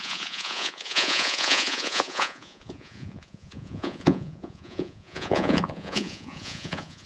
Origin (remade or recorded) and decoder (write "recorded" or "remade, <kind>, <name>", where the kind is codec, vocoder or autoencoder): remade, vocoder, Vocos